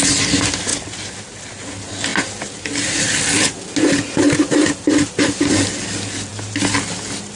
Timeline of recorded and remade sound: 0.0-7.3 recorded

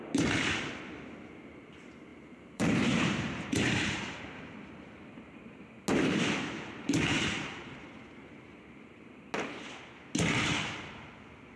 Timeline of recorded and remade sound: 0.0-2.1 recorded; 2.1-5.4 remade; 5.4-7.1 recorded; 7.1-7.8 remade; 7.8-11.6 recorded

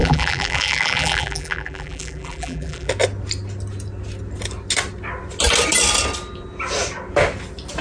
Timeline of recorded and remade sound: 0.0-2.9 remade; 2.9-7.8 recorded

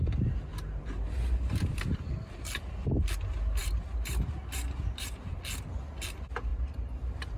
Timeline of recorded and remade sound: 0.0-0.5 recorded; 0.5-1.8 remade; 1.8-3.6 recorded; 3.6-5.4 remade; 5.4-6.5 recorded; 6.5-7.4 remade